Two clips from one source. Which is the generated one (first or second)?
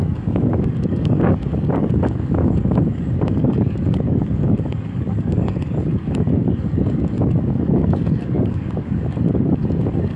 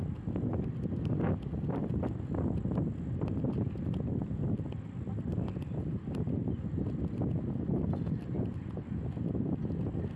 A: first